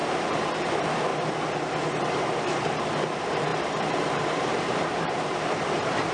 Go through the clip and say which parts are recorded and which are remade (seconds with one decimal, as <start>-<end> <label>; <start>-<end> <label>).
0.0-1.1 remade; 1.1-2.0 recorded; 2.0-6.1 remade

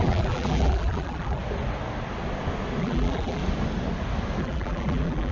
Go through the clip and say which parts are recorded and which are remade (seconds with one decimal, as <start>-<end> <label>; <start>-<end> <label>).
0.0-1.4 remade; 1.4-2.8 recorded; 2.8-3.4 remade; 3.4-4.4 recorded; 4.4-5.3 remade

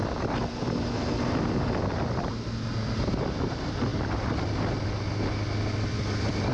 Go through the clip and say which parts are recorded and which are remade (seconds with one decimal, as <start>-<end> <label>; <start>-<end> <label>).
0.0-6.5 recorded

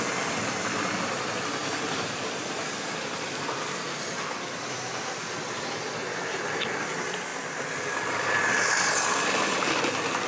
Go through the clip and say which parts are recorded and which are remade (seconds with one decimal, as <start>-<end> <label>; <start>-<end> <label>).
0.0-7.3 recorded; 7.3-10.3 remade

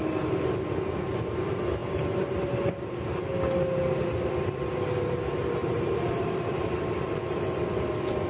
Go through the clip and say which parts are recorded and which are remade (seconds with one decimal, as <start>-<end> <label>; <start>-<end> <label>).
0.0-5.6 recorded; 5.6-7.6 remade; 7.6-8.3 recorded

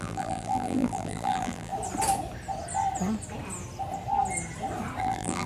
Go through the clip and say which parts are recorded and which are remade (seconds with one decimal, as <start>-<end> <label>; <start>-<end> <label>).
0.0-1.7 remade; 1.7-5.0 recorded; 5.0-5.5 remade

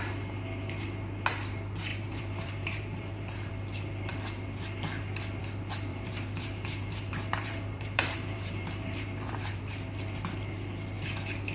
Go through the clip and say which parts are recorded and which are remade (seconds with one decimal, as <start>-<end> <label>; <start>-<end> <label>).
0.0-1.9 recorded; 1.9-3.5 remade; 3.5-5.9 recorded; 5.9-9.6 remade; 9.6-11.5 recorded